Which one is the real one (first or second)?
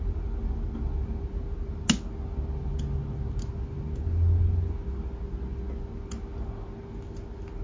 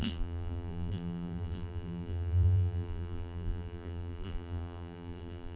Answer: first